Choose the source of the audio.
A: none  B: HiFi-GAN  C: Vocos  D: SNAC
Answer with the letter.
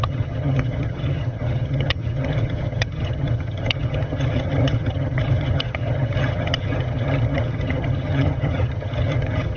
B